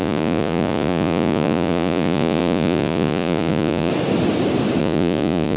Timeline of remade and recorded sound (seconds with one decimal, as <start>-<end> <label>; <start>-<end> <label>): 0.0-3.9 remade; 3.9-4.8 recorded; 4.8-5.6 remade